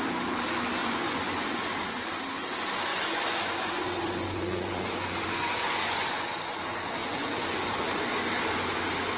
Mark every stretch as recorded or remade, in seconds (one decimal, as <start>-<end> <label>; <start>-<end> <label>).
0.0-0.8 recorded; 0.8-2.2 remade; 2.2-2.9 recorded; 2.9-6.6 remade; 6.6-7.0 recorded; 7.0-8.3 remade; 8.3-9.2 recorded